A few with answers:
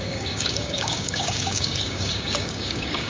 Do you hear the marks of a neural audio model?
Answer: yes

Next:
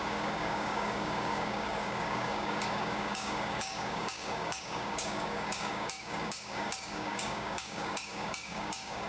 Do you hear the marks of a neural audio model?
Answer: yes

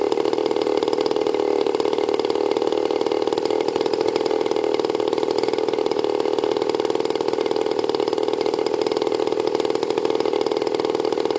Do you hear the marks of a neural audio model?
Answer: no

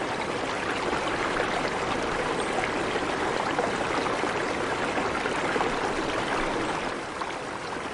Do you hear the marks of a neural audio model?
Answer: no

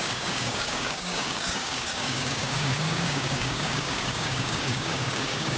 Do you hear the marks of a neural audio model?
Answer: yes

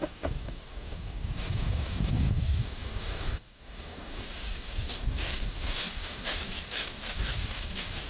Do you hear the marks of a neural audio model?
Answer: yes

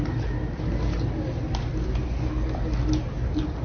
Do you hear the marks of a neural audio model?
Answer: no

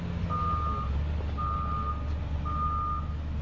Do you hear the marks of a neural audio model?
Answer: no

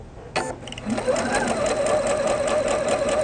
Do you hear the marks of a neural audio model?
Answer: no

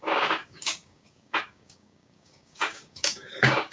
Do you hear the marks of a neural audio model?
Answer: yes